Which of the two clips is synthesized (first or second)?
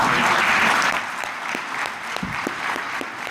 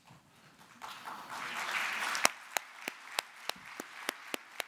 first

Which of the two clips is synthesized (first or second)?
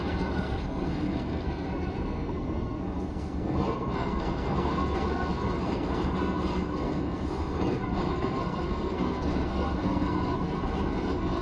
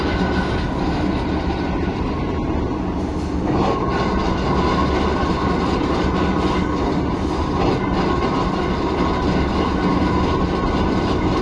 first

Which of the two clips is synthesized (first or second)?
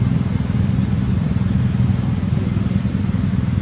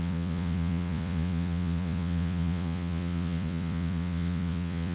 second